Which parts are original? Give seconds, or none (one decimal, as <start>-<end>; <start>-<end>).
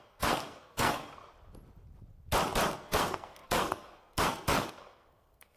1.2-2.7